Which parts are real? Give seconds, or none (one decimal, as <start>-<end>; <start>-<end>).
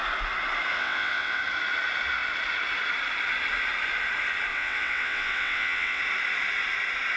0.0-0.7; 1.4-4.5; 6.0-7.2